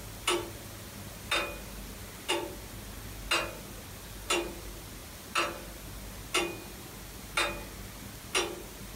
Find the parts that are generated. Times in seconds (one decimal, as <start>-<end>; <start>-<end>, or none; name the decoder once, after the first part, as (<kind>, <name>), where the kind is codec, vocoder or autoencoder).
none